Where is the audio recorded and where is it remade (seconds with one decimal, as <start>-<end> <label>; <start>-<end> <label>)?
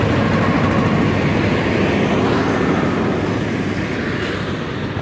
0.0-5.0 recorded